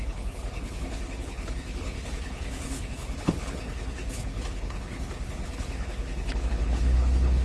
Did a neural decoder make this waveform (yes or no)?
yes